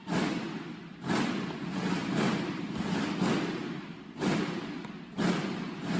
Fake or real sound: real